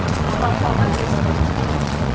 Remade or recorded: remade